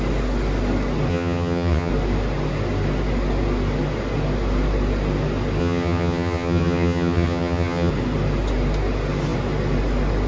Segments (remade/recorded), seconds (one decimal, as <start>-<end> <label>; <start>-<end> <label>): 0.0-1.1 recorded; 1.1-1.9 remade; 1.9-5.6 recorded; 5.6-7.9 remade; 7.9-10.3 recorded